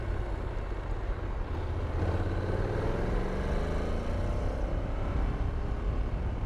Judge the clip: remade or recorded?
recorded